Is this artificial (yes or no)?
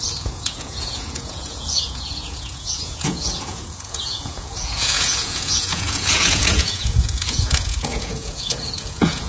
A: yes